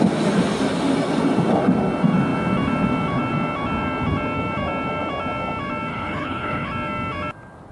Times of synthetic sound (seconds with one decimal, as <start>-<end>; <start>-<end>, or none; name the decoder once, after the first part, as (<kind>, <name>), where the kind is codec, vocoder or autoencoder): 5.9-6.7 (codec, HILCodec)